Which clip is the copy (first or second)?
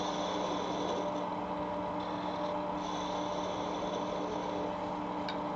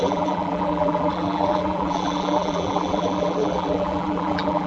second